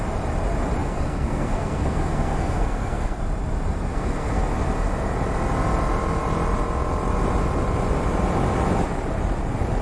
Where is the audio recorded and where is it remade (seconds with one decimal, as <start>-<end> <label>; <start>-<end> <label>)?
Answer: 0.0-0.8 recorded; 0.8-3.2 remade; 3.2-3.9 recorded; 3.9-4.4 remade; 4.4-9.8 recorded